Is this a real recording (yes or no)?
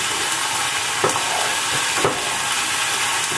yes